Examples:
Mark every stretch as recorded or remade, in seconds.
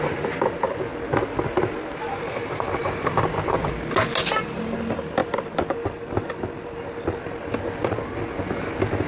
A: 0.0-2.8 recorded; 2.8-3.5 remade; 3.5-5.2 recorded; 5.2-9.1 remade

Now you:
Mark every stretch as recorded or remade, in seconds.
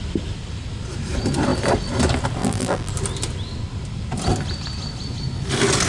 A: 0.0-2.4 recorded; 2.4-2.9 remade; 2.9-5.9 recorded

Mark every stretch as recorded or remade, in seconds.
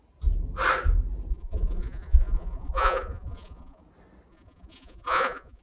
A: 0.0-1.3 recorded; 1.3-3.8 remade; 3.8-4.3 recorded; 4.3-5.6 remade